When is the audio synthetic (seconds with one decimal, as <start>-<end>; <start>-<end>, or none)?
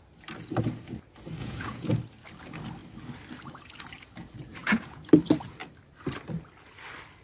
1.4-1.9; 4.6-5.1